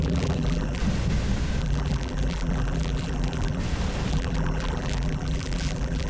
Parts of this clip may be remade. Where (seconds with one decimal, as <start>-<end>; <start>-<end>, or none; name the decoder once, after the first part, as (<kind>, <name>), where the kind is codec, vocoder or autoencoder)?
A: 0.0-0.8 (vocoder, BigVGAN v2); 1.6-3.6; 4.1-6.1